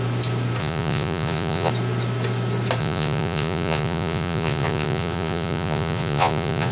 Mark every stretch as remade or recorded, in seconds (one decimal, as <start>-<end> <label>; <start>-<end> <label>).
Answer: 0.0-0.6 recorded; 0.6-1.7 remade; 1.7-2.8 recorded; 2.8-6.7 remade